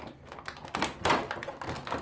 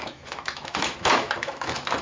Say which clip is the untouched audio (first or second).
first